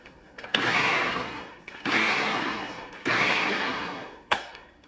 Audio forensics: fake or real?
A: fake